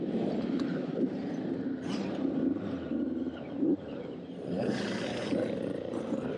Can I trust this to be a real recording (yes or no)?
no